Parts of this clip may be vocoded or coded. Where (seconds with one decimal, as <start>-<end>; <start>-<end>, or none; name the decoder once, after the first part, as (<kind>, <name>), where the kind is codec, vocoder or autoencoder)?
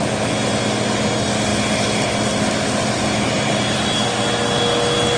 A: none